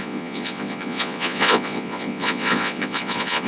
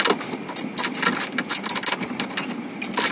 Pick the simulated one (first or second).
first